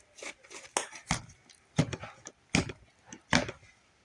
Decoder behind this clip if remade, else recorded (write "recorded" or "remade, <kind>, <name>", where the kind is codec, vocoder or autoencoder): recorded